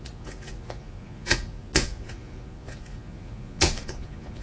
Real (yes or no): no